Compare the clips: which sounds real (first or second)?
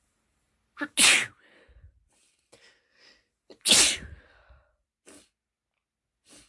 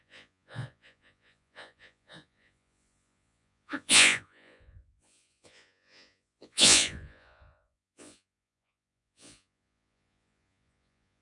first